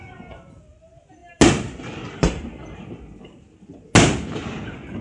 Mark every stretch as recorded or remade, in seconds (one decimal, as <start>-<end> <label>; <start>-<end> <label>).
0.0-5.0 recorded